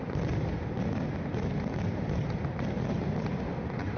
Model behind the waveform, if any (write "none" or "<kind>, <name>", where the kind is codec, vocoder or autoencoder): none